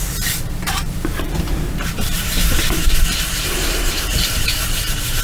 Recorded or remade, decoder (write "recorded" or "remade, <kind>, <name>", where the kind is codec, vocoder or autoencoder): remade, vocoder, BigVGAN v2